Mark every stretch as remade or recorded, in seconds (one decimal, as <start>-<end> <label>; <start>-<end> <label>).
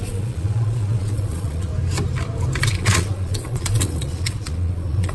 0.0-1.7 remade; 1.7-2.6 recorded; 2.6-5.1 remade